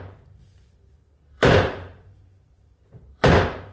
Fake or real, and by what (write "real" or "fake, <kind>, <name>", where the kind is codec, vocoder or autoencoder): fake, vocoder, BigVGAN v2